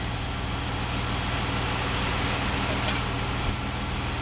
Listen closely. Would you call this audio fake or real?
real